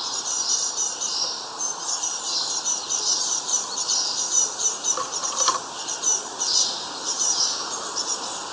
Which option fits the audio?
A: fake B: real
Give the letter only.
A